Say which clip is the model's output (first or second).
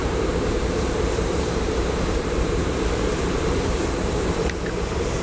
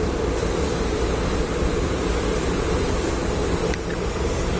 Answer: first